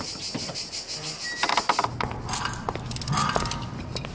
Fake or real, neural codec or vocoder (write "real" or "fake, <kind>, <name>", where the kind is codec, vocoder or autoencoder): real